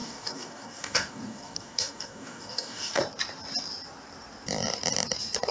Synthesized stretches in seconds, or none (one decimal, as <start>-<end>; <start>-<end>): 0.0-3.0

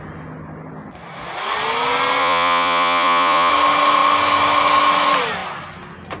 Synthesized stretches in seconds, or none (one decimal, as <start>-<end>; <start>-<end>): 2.2-3.5

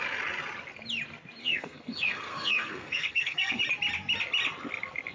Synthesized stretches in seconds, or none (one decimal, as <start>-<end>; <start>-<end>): 1.4-3.6